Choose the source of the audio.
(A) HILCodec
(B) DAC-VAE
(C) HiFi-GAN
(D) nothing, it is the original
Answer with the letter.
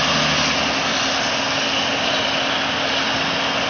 D